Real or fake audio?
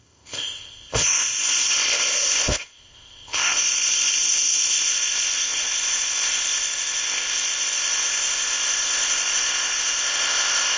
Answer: fake